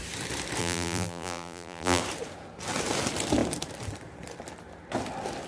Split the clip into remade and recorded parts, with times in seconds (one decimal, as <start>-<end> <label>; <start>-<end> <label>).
0.0-0.6 recorded; 0.6-2.0 remade; 2.0-5.5 recorded